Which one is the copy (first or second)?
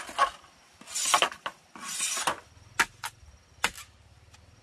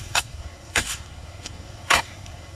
second